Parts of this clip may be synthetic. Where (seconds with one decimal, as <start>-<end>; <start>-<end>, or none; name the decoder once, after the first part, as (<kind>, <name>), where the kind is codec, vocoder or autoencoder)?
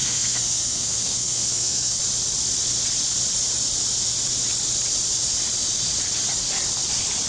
0.0-2.0 (codec, SNAC)